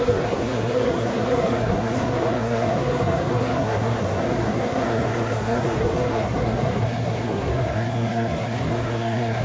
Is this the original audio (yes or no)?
no